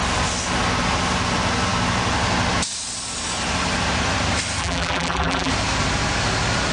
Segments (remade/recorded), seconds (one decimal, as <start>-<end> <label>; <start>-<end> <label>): 0.0-4.6 recorded; 4.6-5.5 remade; 5.5-6.7 recorded